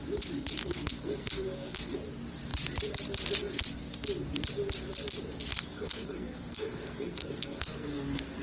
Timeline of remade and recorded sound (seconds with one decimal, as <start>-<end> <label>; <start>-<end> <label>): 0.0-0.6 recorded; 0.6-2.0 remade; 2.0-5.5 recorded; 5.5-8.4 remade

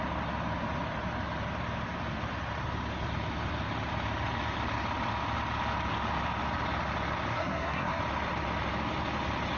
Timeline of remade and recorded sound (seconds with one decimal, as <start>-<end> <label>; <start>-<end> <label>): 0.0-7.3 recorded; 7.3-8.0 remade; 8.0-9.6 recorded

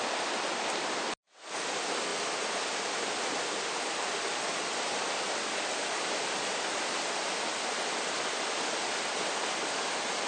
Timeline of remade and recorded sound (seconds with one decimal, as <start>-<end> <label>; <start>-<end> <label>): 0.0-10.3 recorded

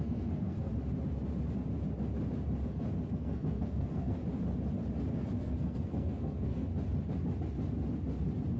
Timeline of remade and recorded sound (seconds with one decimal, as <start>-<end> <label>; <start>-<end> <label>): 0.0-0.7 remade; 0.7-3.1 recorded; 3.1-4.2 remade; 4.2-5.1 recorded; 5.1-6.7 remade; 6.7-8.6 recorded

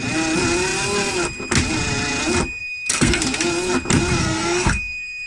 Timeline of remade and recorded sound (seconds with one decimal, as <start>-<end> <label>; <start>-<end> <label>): 0.0-2.6 recorded; 2.6-3.2 remade; 3.2-4.2 recorded; 4.2-5.3 remade

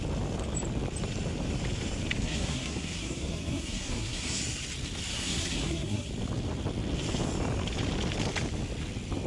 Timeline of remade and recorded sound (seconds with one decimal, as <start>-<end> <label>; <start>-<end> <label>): 0.0-2.2 recorded; 2.2-4.4 remade; 4.4-5.1 recorded; 5.1-6.1 remade; 6.1-9.3 recorded